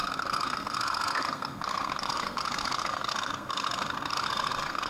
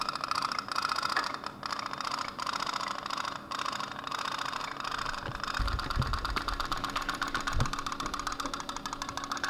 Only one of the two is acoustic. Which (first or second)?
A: second